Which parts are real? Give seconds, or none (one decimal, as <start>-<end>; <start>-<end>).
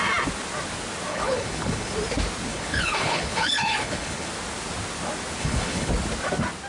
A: 0.0-1.1; 1.9-2.5; 4.3-5.4; 5.9-6.7